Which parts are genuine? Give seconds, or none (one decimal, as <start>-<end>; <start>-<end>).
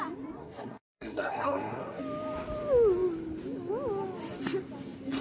0.0-0.4; 2.0-5.2